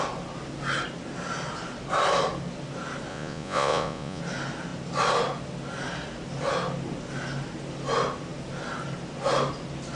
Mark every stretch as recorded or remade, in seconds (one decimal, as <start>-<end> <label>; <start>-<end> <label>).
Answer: 0.0-3.1 recorded; 3.1-4.2 remade; 4.2-10.0 recorded